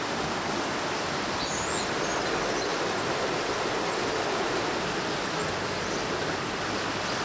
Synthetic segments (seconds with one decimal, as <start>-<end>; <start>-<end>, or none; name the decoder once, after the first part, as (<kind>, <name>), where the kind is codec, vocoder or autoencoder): 2.7-4.2 (vocoder, BigVGAN v2)